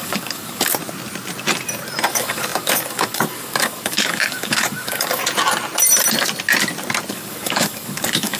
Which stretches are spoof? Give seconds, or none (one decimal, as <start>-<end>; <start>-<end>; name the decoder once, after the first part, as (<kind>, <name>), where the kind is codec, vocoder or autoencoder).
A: 0.0-0.7 (codec, DAC); 2.1-5.2; 7.1-8.4